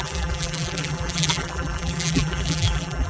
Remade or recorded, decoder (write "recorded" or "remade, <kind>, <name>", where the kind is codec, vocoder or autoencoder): remade, vocoder, BigVGAN v2